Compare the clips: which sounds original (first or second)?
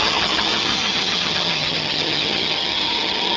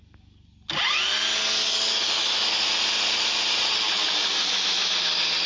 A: second